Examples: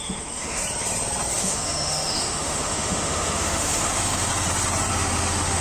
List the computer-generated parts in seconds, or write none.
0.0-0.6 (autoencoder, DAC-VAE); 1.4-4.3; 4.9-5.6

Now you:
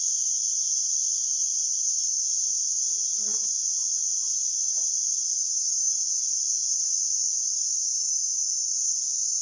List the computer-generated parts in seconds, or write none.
1.7-2.8 (autoencoder, DAC-VAE); 5.4-5.9; 7.7-8.7

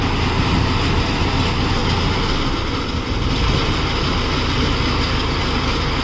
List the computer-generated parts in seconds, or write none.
none

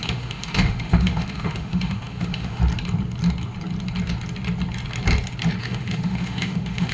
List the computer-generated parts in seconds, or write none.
0.0-2.6 (autoencoder, DAC-VAE); 5.6-6.9

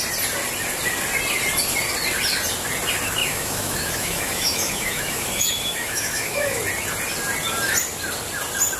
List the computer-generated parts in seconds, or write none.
3.2-6.6 (autoencoder, DAC-VAE)

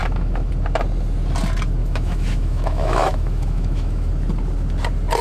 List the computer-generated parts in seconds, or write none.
0.0-0.5 (autoencoder, DAC-VAE); 1.8-4.1